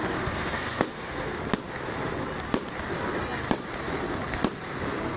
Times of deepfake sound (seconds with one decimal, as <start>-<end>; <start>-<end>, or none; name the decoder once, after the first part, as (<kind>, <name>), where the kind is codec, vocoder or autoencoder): 0.0-1.4 (codec, SNAC)